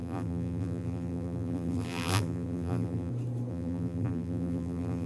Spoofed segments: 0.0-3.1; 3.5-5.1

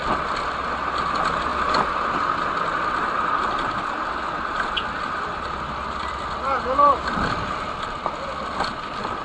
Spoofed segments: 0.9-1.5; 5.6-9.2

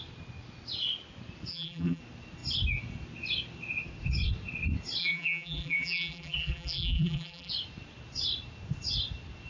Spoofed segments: 1.5-2.0; 5.0-7.5

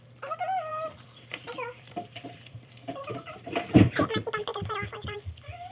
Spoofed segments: 0.7-4.1; 4.5-5.7